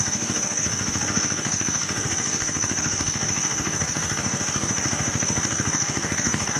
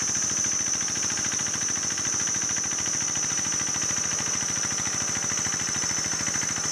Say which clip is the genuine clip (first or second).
second